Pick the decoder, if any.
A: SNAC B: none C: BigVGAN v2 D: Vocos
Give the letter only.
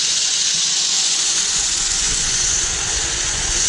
D